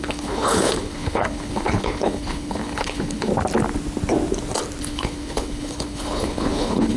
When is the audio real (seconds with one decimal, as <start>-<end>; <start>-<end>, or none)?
3.3-4.8